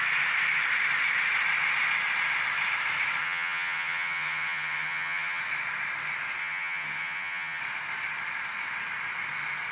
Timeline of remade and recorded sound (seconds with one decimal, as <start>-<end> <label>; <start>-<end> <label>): 0.0-3.2 recorded; 3.2-5.4 remade; 5.4-6.4 recorded; 6.4-7.6 remade; 7.6-9.7 recorded